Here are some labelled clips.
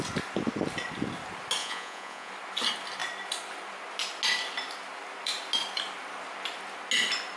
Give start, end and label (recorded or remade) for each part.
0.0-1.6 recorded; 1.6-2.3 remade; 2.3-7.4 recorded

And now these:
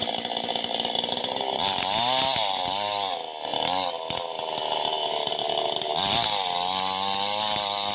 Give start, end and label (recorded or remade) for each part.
0.0-7.9 recorded